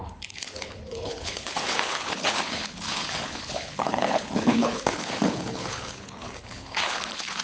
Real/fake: fake